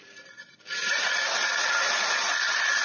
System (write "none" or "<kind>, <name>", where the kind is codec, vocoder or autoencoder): none